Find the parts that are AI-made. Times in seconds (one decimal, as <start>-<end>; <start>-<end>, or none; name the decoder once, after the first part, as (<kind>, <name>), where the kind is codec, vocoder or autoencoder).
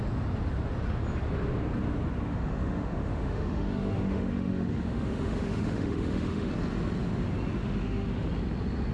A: 2.3-6.5 (autoencoder, DAC-VAE); 7.6-8.3